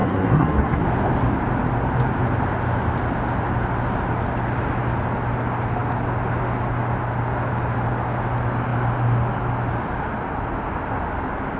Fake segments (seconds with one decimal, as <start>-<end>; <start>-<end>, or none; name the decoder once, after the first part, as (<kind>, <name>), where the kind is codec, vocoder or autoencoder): 0.0-0.8 (codec, SNAC)